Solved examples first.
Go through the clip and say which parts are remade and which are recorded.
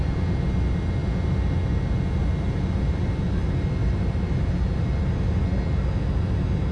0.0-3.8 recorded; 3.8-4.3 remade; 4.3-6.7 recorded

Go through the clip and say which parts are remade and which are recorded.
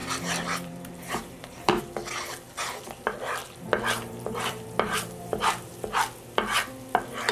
0.0-1.8 remade; 1.8-3.4 recorded; 3.4-5.7 remade; 5.7-7.3 recorded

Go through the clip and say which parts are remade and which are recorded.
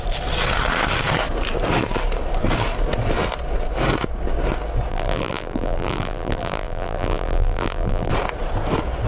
0.0-4.9 recorded; 4.9-8.1 remade; 8.1-9.1 recorded